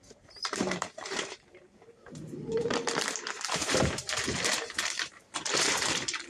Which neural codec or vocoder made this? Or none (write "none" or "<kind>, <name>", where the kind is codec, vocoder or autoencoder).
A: vocoder, BigVGAN v2